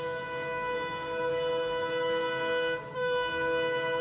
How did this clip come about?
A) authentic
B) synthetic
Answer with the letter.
B